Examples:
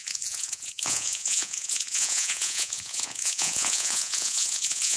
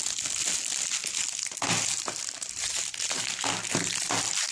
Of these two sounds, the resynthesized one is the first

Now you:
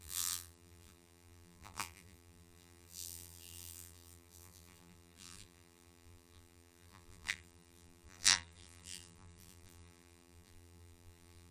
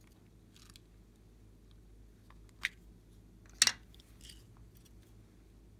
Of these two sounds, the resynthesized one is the first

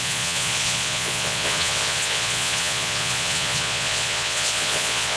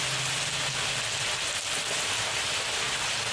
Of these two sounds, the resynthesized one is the first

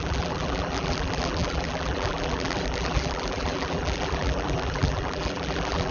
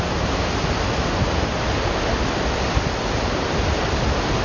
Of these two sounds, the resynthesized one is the first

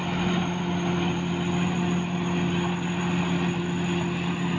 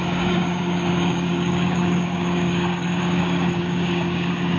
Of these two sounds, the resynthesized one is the second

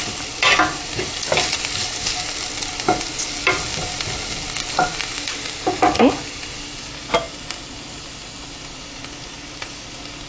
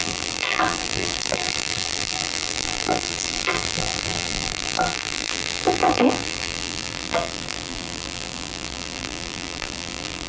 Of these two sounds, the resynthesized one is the second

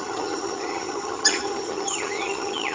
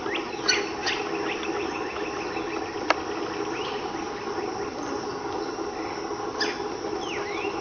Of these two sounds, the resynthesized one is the first